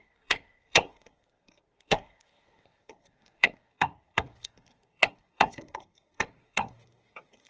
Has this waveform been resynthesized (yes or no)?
yes